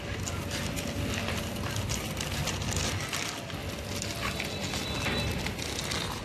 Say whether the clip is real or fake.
real